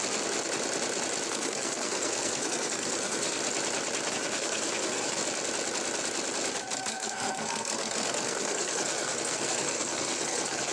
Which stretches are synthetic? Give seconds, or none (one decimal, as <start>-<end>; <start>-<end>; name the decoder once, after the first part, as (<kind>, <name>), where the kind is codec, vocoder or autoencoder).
1.3-3.4 (codec, SNAC); 4.1-5.2; 6.8-10.7